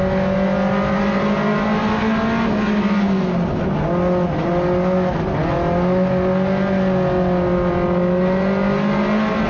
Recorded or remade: recorded